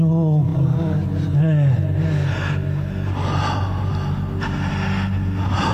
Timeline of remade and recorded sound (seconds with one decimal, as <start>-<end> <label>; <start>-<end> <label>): 0.0-5.7 recorded